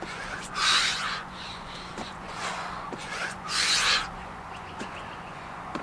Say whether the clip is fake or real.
fake